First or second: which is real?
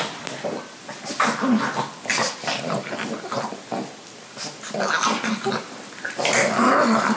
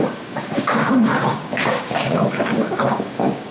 first